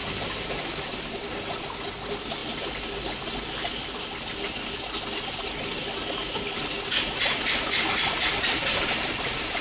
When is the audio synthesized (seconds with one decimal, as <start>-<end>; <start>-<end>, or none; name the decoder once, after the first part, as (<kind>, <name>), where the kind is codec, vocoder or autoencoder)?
8.3-9.1 (vocoder, BigVGAN v2)